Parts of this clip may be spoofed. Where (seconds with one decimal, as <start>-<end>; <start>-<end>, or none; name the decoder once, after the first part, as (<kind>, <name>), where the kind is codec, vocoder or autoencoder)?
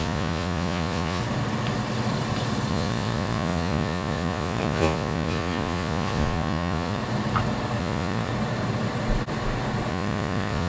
0.0-1.2 (vocoder, Vocos); 2.7-7.0; 7.8-8.3; 9.9-10.7